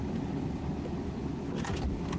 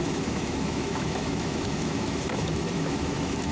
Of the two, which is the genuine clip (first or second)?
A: first